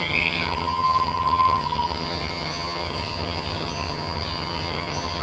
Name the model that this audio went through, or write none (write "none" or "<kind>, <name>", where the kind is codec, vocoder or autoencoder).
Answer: vocoder, HiFi-GAN